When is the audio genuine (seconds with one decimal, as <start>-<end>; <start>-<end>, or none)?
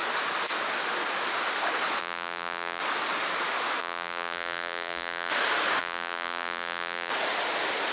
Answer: 0.0-2.0; 2.8-3.8; 5.3-5.8; 7.1-7.9